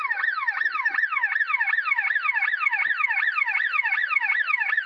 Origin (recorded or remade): recorded